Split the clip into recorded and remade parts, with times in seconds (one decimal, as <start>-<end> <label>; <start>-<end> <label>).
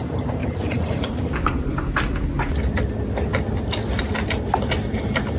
0.0-0.4 recorded; 0.4-1.2 remade; 1.2-5.4 recorded